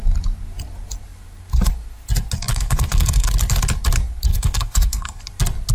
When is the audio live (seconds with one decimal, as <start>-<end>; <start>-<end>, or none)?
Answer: 0.0-2.5; 3.3-4.3; 5.2-5.7